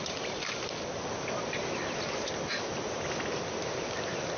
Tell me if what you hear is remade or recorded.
recorded